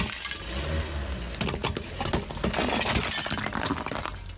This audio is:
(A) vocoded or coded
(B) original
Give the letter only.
B